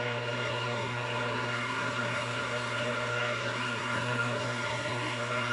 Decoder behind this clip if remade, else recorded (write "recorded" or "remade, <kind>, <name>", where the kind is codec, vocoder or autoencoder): remade, codec, SNAC